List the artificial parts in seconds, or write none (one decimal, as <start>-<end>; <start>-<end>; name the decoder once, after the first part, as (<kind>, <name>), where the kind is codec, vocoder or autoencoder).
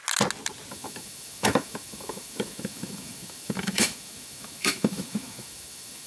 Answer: 0.7-6.1 (autoencoder, DAC-VAE)